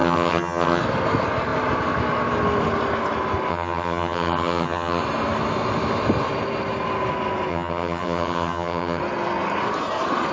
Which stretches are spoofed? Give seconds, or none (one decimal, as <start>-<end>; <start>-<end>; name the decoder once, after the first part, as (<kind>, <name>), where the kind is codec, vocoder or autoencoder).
0.0-0.8 (vocoder, HiFi-GAN); 3.5-5.0; 7.5-9.0